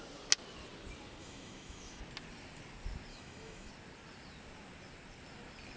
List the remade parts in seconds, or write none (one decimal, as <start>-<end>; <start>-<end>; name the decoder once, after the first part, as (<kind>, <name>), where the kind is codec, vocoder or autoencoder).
1.2-2.0 (autoencoder, DAC-VAE); 3.1-3.7